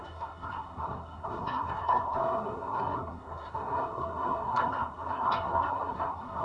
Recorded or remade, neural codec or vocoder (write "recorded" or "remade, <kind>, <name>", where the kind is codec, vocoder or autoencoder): remade, codec, SNAC